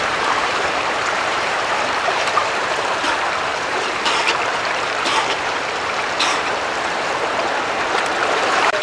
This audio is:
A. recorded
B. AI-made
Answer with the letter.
B